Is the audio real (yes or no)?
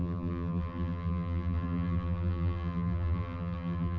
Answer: no